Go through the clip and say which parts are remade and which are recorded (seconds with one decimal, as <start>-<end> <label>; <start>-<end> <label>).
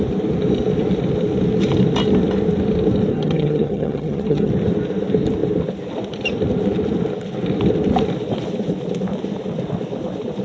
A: 0.0-3.1 recorded; 3.1-4.5 remade; 4.5-10.4 recorded